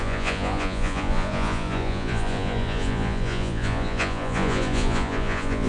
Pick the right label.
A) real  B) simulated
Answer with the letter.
B